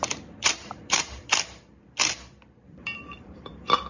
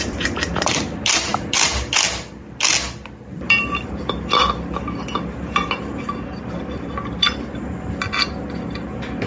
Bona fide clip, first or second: second